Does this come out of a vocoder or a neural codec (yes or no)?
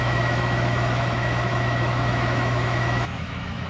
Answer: yes